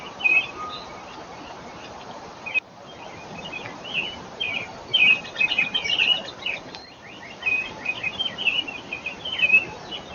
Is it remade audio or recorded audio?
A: remade